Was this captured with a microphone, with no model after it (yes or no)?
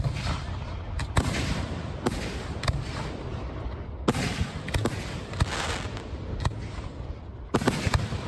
yes